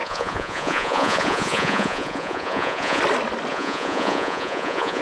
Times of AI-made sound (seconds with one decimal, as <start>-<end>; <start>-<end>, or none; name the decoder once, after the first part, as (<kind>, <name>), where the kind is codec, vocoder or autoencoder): 0.0-3.0 (vocoder, Vocos); 3.5-5.0